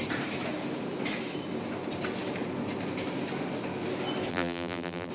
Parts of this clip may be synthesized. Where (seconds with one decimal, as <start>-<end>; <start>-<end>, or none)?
4.3-5.1